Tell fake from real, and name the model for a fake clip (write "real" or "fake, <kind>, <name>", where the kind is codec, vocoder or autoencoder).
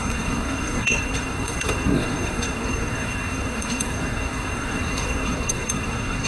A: fake, codec, SNAC